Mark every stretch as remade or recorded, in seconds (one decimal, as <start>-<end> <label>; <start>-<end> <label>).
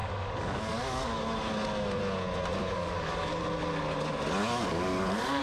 0.0-1.2 remade; 1.2-2.6 recorded; 2.6-3.4 remade; 3.4-4.4 recorded; 4.4-5.4 remade